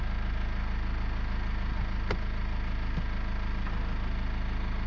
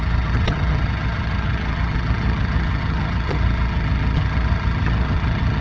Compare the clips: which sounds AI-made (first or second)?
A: second